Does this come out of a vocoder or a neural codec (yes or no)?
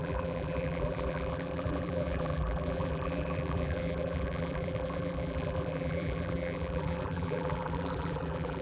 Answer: yes